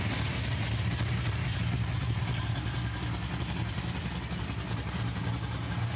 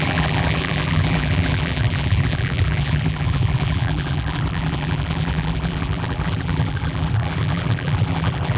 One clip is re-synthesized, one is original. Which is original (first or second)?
first